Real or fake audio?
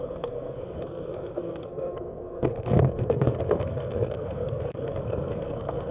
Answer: fake